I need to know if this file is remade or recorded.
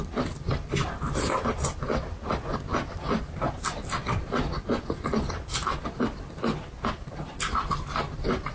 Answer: recorded